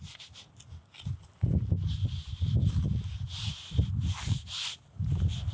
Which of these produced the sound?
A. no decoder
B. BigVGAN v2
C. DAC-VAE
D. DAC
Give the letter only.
A